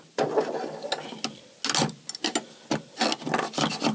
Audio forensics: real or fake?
real